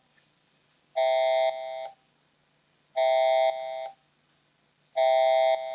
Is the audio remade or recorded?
recorded